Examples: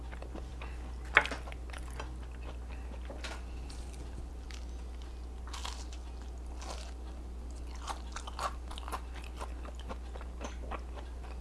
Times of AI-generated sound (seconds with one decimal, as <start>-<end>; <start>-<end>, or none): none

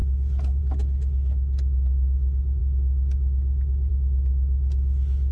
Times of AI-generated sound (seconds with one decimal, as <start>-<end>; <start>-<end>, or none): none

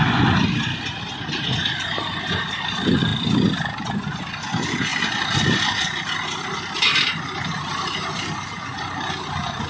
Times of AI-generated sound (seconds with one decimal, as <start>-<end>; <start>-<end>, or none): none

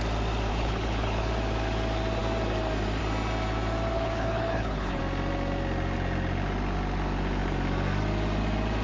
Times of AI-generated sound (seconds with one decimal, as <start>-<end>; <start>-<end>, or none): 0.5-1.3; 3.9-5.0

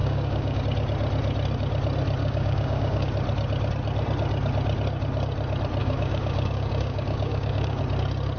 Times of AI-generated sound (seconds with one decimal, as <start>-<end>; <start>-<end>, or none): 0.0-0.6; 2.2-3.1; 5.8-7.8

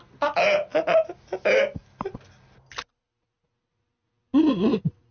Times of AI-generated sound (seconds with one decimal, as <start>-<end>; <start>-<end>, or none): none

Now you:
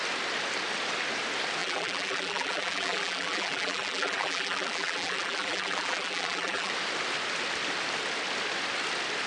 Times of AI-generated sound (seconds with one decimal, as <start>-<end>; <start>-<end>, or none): 1.6-6.7